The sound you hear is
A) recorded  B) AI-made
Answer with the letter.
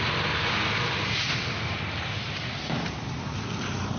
A